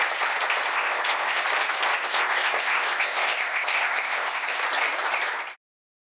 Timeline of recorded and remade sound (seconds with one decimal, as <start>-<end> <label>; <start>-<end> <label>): 0.0-0.7 recorded; 0.7-1.4 remade; 1.4-2.0 recorded; 2.0-4.6 remade; 4.6-6.1 recorded